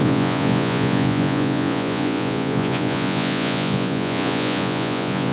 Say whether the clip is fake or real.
fake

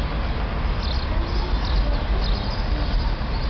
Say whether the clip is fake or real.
real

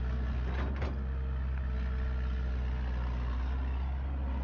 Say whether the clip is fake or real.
real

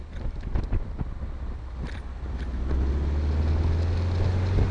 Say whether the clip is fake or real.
real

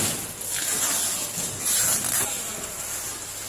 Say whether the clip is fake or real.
real